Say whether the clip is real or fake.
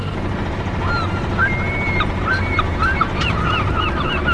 real